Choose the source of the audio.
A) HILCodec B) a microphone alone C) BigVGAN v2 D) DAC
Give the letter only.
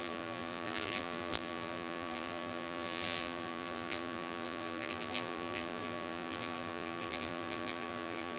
C